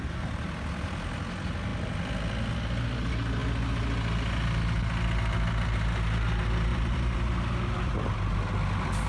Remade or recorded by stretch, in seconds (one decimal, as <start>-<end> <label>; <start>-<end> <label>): 0.0-6.7 recorded; 6.7-7.3 remade; 7.3-9.1 recorded